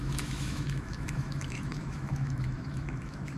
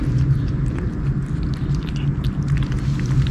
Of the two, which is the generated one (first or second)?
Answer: first